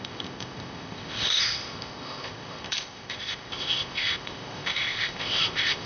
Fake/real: fake